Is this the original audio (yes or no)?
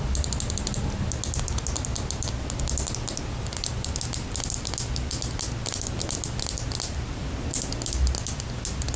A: yes